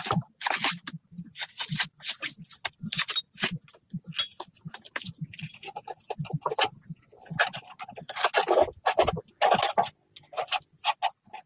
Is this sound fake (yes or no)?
no